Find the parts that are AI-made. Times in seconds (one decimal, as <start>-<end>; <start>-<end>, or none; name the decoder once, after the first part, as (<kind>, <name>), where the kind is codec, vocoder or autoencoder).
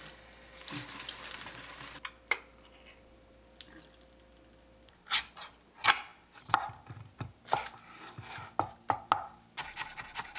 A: none